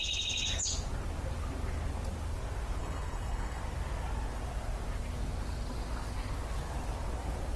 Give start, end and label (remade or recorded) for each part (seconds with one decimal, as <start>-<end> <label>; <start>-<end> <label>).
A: 0.0-2.8 recorded; 2.8-3.6 remade; 3.6-7.6 recorded